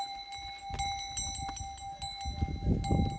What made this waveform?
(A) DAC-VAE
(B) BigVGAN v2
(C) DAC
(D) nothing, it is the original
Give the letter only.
D